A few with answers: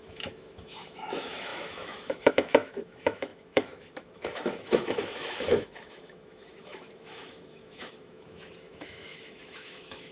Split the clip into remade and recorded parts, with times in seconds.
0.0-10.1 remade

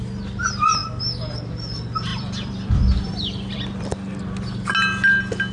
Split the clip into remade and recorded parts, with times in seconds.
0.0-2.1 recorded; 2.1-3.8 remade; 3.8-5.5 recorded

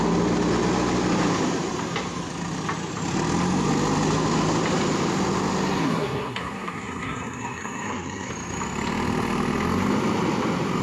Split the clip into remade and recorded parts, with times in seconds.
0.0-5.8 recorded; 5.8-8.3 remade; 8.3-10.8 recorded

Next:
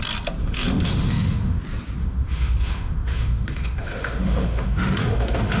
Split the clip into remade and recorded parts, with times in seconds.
0.0-0.4 recorded; 0.4-1.6 remade; 1.6-2.0 recorded; 2.0-5.6 remade

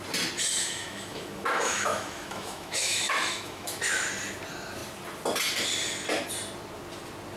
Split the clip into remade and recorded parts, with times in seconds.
0.0-0.6 recorded; 0.6-3.8 remade; 3.8-7.4 recorded

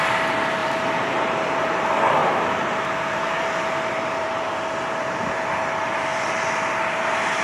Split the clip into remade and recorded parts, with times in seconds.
0.0-0.6 recorded; 0.6-1.6 remade; 1.6-2.2 recorded; 2.2-4.5 remade; 4.5-7.4 recorded

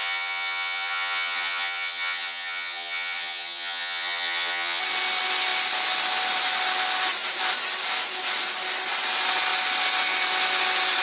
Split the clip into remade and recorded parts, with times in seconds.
0.0-4.8 remade; 4.8-11.0 recorded